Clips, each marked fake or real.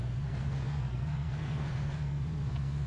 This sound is fake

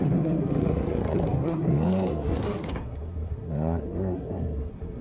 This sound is fake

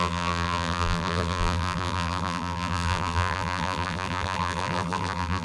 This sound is fake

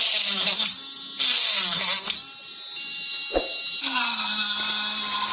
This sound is real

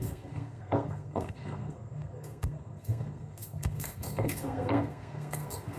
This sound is fake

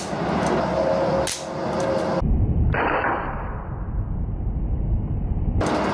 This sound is real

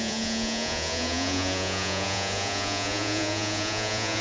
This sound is fake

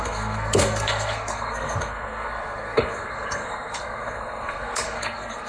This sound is fake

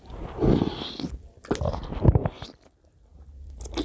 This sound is real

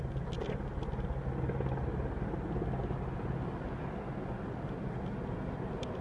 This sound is real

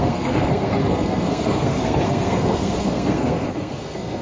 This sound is fake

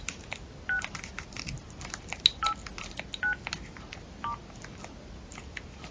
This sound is real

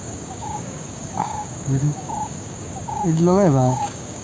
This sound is fake